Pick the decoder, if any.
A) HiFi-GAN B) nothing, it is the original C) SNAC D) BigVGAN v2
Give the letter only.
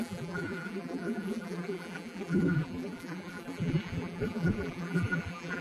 D